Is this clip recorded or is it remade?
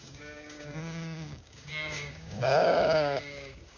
remade